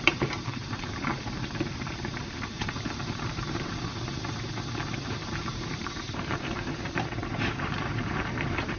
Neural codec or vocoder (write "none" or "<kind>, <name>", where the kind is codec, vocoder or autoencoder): vocoder, BigVGAN v2